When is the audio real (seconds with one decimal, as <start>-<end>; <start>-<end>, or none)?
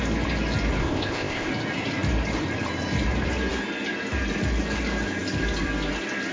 0.0-0.8; 1.5-6.3